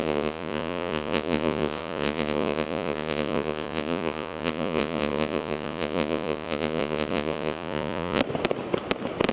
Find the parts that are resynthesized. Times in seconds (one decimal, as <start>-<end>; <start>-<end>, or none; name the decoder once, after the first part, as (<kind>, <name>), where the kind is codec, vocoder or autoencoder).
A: 0.0-8.2 (vocoder, Vocos)